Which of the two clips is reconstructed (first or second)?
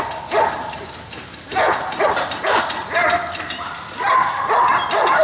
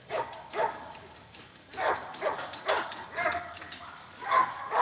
second